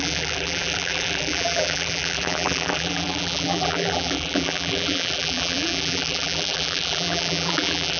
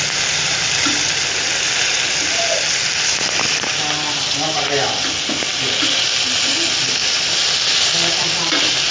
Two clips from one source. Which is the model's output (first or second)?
first